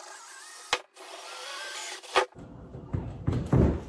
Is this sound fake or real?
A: real